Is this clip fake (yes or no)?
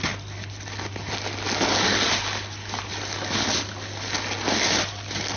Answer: no